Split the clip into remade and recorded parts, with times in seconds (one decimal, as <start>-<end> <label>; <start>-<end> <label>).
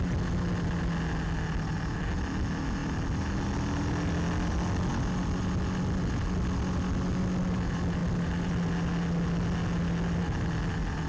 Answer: 0.0-11.1 recorded